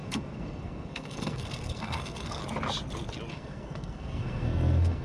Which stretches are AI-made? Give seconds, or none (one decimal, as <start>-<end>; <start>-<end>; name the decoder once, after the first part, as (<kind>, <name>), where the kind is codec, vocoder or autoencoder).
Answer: 0.0-2.4 (codec, SNAC); 3.3-5.0